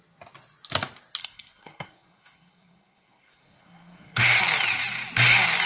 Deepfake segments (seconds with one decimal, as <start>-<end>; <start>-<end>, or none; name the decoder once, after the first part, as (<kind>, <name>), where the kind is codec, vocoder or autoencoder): 1.2-4.4 (codec, SNAC)